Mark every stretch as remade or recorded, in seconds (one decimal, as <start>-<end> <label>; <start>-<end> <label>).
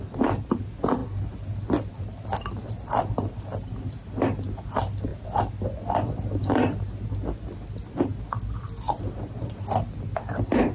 0.0-10.7 recorded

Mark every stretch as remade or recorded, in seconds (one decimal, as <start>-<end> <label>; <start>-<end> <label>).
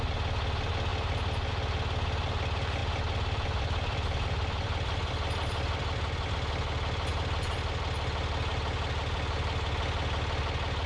0.0-0.9 recorded; 0.9-1.5 remade; 1.5-2.8 recorded; 2.8-6.3 remade; 6.3-7.1 recorded; 7.1-7.8 remade; 7.8-10.9 recorded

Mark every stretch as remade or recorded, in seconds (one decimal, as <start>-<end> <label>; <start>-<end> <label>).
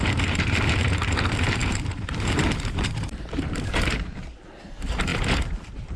0.0-6.0 remade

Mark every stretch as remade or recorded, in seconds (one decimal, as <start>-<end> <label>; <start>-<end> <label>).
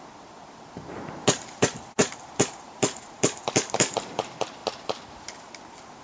0.0-2.0 remade; 2.0-3.0 recorded; 3.0-4.6 remade; 4.6-5.4 recorded; 5.4-6.0 remade